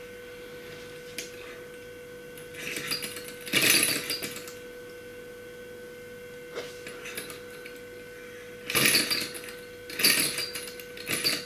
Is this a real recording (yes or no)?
yes